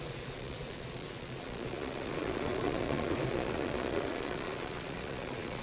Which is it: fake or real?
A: fake